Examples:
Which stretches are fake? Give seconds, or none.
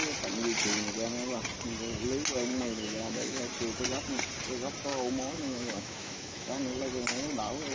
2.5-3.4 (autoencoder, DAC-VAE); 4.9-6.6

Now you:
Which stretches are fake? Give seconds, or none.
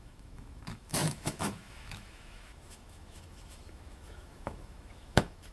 0.0-5.5 (autoencoder, DAC-VAE)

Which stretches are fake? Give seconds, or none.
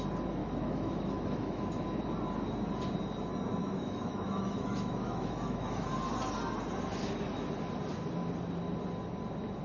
0.4-1.6 (autoencoder, DAC-VAE); 3.6-5.9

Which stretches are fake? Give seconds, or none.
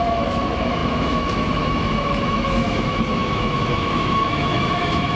0.0-5.2 (autoencoder, DAC-VAE)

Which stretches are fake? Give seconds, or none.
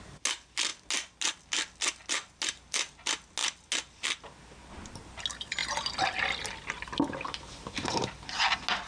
none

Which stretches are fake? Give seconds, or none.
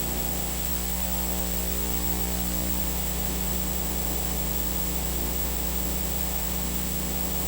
0.0-0.7 (autoencoder, DAC-VAE); 2.8-7.5